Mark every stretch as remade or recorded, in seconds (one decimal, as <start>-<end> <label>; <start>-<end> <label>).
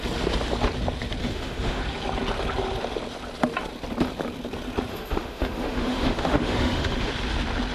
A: 0.0-1.2 recorded; 1.2-1.8 remade; 1.8-4.9 recorded; 4.9-7.1 remade; 7.1-7.7 recorded